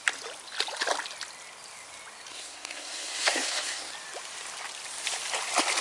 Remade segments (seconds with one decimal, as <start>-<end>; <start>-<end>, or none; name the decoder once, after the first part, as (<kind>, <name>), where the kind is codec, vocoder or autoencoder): 2.3-3.9 (codec, SNAC)